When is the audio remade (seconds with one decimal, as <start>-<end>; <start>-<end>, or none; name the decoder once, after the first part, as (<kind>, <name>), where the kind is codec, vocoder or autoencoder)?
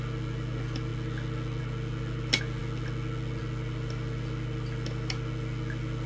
none